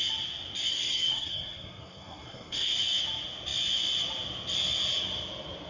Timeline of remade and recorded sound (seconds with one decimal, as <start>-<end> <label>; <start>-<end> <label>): 0.0-0.7 recorded; 0.7-2.7 remade; 2.7-5.7 recorded